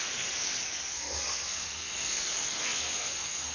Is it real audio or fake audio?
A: fake